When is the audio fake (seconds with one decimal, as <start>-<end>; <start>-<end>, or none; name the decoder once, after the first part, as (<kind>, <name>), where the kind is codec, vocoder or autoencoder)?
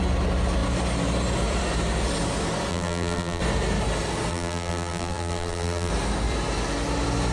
2.7-3.4 (vocoder, BigVGAN v2); 4.3-5.9